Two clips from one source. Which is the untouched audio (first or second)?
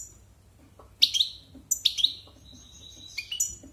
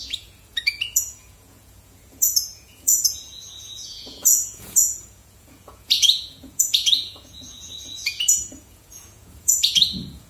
first